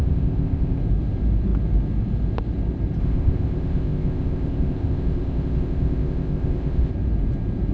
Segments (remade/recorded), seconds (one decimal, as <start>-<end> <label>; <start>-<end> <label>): 0.0-0.8 remade; 0.8-3.0 recorded; 3.0-6.9 remade; 6.9-7.7 recorded